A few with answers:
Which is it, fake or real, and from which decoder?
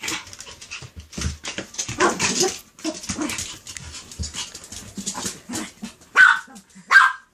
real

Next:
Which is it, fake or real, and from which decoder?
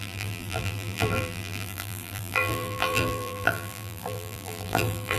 fake, vocoder, BigVGAN v2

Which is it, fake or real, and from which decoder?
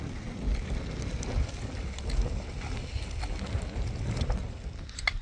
real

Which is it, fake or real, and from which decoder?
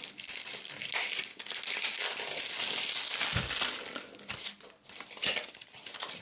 real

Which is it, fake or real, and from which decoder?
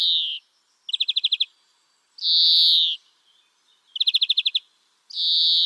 real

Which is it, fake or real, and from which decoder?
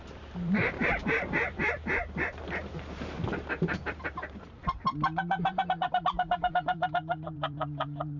fake, vocoder, BigVGAN v2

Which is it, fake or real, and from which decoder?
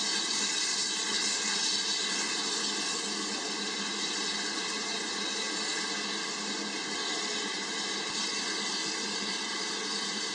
real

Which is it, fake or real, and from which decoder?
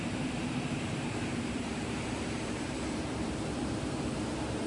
fake, vocoder, BigVGAN v2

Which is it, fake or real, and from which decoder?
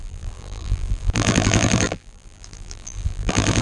fake, vocoder, BigVGAN v2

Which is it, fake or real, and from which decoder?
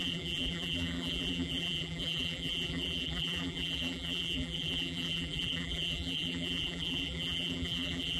fake, vocoder, BigVGAN v2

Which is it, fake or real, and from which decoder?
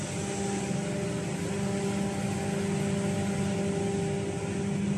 real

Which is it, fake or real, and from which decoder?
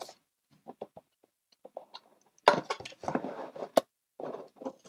real